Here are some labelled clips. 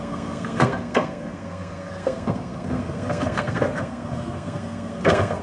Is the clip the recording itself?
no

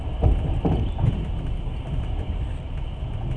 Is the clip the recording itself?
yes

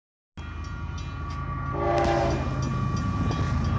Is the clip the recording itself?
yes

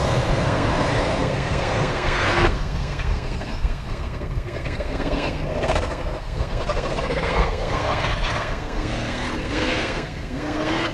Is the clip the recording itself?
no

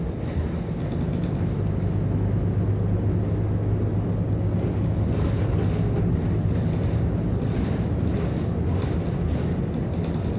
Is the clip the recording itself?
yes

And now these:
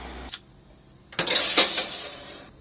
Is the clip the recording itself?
yes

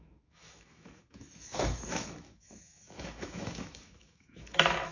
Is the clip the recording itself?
no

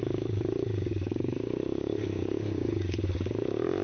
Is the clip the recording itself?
no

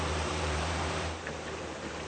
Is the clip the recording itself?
no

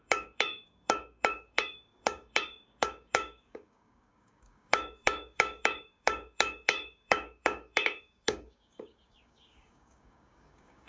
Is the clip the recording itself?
no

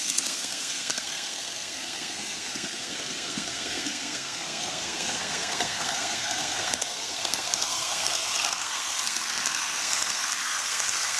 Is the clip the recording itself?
no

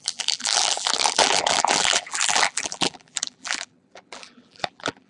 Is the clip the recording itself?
no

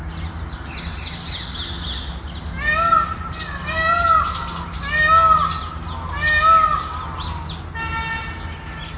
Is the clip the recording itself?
yes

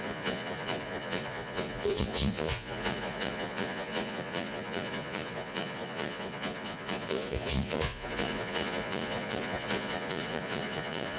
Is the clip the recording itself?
no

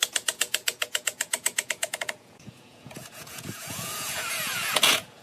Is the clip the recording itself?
no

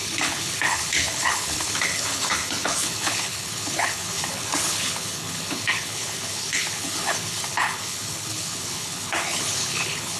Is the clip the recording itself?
no